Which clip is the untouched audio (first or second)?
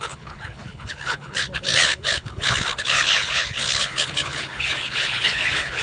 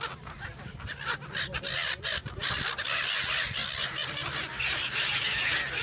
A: second